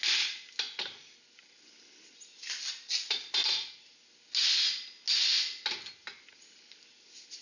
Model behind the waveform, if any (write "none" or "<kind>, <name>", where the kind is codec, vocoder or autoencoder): none